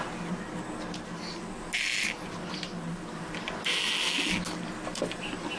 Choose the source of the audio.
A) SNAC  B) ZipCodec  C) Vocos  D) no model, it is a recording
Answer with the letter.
D